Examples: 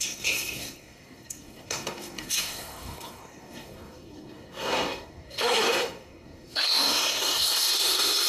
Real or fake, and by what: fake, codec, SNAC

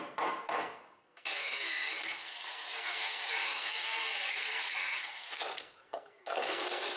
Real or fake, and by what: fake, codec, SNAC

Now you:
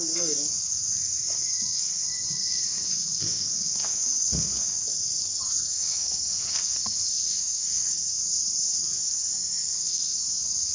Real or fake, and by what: fake, codec, SNAC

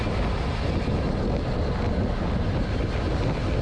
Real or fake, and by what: real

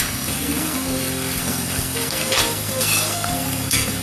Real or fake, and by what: fake, codec, SNAC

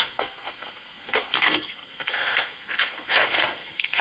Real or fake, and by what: fake, codec, SNAC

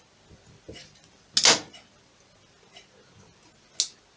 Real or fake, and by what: real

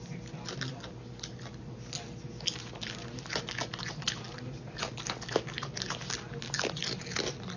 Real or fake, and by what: real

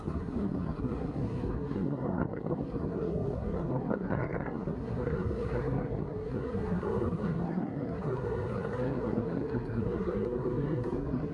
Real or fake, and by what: fake, codec, SNAC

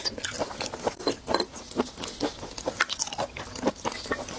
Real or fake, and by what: real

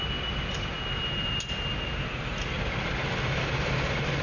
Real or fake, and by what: real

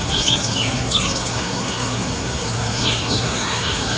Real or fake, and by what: fake, codec, SNAC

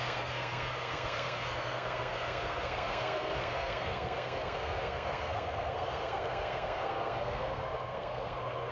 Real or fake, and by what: fake, codec, SNAC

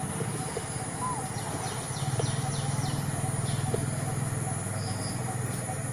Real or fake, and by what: real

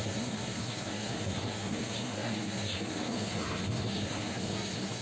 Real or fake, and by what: fake, codec, SNAC